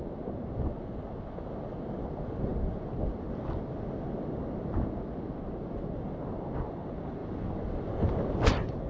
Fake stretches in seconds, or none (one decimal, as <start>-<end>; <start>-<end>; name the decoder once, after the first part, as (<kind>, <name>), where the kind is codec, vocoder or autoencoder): none